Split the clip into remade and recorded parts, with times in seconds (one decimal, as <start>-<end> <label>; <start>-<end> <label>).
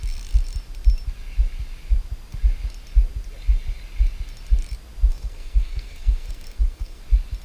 0.0-5.1 recorded; 5.1-7.0 remade; 7.0-7.4 recorded